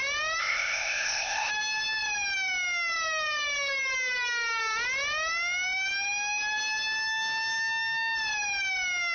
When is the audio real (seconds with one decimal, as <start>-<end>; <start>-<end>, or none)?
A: 0.0-0.4; 1.5-9.1